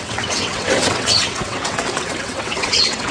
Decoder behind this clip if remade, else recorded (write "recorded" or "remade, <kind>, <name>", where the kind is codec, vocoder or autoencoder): remade, vocoder, WaveNeXt